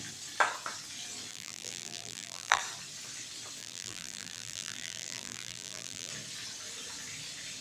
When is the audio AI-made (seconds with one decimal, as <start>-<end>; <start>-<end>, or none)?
1.3-2.6; 3.6-6.1